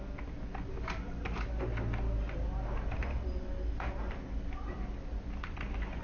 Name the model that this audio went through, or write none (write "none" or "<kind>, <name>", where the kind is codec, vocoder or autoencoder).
none